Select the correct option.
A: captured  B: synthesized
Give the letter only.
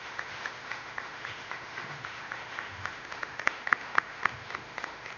B